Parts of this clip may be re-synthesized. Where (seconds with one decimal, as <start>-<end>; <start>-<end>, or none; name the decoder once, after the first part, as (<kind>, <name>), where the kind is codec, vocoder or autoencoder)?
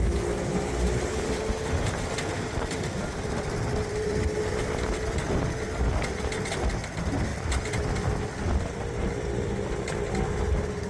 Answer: 0.5-4.5 (vocoder, BigVGAN v2); 7.3-8.4